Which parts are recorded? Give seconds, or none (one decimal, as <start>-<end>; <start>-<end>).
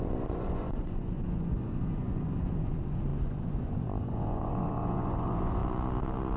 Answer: 5.6-6.4